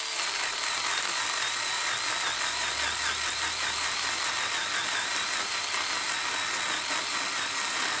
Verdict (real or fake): real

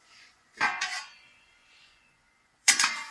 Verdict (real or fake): fake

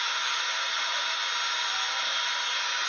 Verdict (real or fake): real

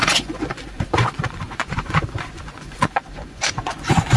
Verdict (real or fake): fake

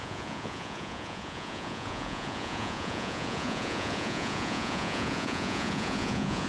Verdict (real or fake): fake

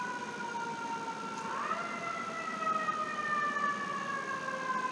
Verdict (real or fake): real